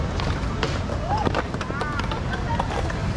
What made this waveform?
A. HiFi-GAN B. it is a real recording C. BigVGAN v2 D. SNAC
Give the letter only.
B